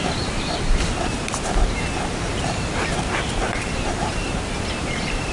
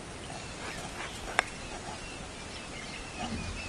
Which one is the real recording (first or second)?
second